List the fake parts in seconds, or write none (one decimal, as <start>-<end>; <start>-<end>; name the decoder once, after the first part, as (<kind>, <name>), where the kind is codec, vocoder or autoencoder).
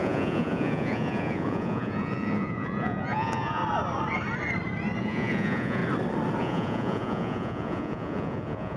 0.0-3.6 (vocoder, Vocos); 5.0-5.8; 6.4-8.8